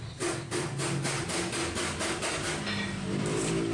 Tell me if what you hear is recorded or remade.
recorded